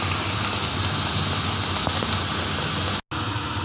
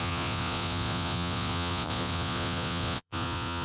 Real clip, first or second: first